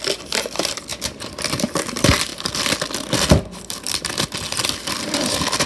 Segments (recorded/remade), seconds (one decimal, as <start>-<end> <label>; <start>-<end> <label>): 0.0-5.7 recorded

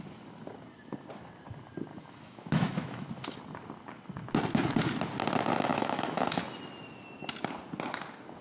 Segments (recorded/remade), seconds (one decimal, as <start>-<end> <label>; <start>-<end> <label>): 0.0-1.9 recorded; 1.9-3.1 remade; 3.1-5.7 recorded; 5.7-6.4 remade; 6.4-8.4 recorded

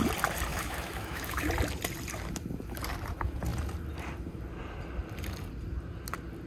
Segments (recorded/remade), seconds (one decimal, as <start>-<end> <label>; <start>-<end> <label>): 0.0-0.5 recorded; 0.5-1.5 remade; 1.5-6.5 recorded

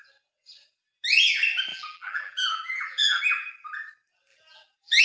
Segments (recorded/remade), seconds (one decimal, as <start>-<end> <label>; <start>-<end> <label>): 0.0-1.7 recorded; 1.7-3.2 remade; 3.2-4.3 recorded; 4.3-5.0 remade

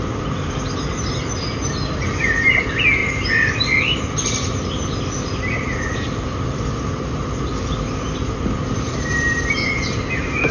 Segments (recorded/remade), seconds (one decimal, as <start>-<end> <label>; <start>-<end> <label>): 0.0-10.5 recorded

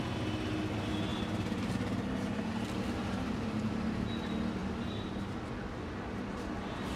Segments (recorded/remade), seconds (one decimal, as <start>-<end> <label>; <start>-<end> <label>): 0.0-7.0 recorded

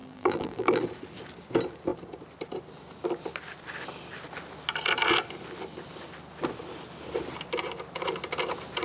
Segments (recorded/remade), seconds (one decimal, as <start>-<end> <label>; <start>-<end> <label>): 0.0-0.8 remade; 0.8-8.8 recorded